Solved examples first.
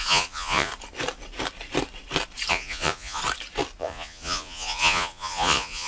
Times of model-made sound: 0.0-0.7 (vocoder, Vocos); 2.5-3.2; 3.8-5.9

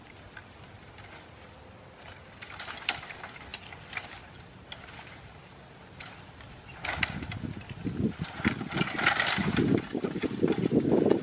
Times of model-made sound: none

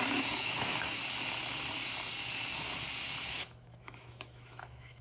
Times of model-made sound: 0.0-1.0 (autoencoder, DAC-VAE); 3.3-5.0

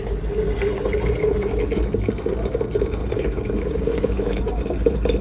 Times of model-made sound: 3.0-4.4 (codec, DAC)